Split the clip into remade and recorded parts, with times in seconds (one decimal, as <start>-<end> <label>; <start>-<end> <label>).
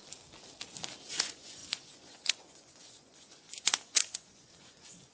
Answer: 0.0-1.1 recorded; 1.1-5.1 remade